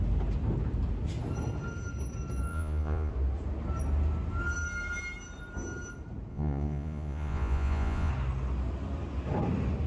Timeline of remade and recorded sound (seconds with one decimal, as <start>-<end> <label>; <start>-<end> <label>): 0.0-2.5 recorded; 2.5-3.1 remade; 3.1-6.3 recorded; 6.3-8.1 remade; 8.1-9.9 recorded